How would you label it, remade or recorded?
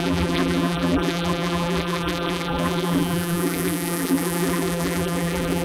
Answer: remade